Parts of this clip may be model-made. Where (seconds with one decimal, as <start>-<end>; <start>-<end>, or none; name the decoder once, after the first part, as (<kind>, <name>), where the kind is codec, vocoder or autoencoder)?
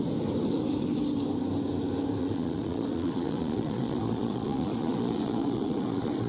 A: 2.2-6.3 (vocoder, Vocos)